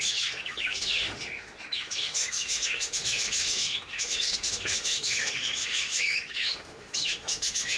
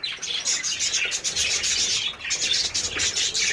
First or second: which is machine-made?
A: first